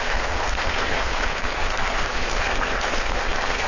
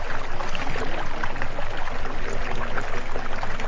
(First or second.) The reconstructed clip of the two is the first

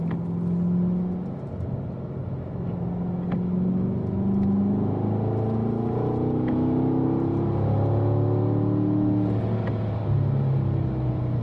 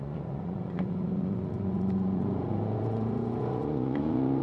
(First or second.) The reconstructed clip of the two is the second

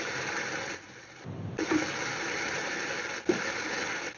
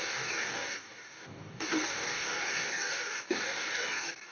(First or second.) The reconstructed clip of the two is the second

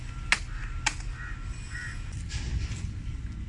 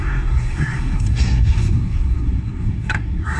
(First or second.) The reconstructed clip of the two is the second